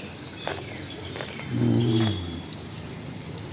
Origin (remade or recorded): recorded